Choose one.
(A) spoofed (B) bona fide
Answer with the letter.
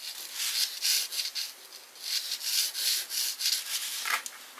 B